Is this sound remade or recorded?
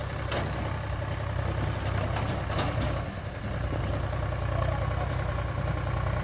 recorded